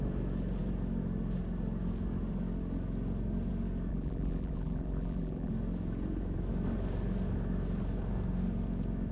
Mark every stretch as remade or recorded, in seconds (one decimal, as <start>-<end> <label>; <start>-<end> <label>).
0.0-3.9 recorded; 3.9-5.5 remade; 5.5-9.1 recorded